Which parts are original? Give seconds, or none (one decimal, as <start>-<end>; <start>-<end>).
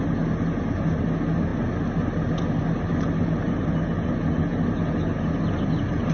0.0-6.1